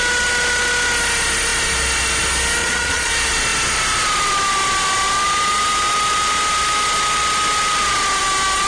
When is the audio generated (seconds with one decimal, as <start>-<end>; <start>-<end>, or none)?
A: 2.6-3.1